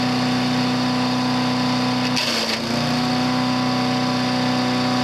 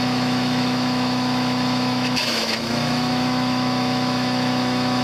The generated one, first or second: second